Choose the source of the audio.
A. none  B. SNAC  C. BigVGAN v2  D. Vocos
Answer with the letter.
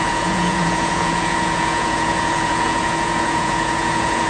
D